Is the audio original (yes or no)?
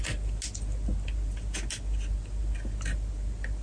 yes